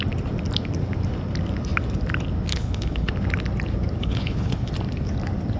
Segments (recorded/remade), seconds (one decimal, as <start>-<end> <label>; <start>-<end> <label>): 0.0-2.5 recorded; 2.5-3.1 remade; 3.1-4.0 recorded; 4.0-4.7 remade; 4.7-5.6 recorded